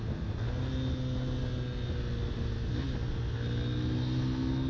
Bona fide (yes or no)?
yes